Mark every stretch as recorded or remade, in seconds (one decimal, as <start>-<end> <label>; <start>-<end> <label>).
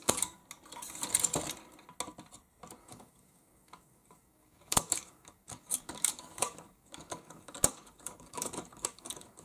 0.0-0.4 remade; 0.4-2.8 recorded; 2.8-9.4 remade